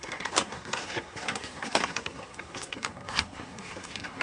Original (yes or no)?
no